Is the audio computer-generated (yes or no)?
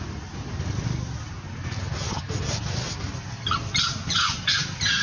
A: no